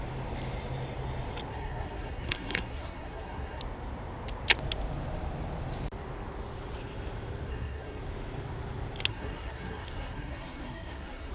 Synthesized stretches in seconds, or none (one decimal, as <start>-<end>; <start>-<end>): 1.5-3.6; 7.5-8.0; 9.1-11.3